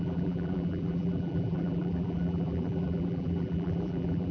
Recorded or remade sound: remade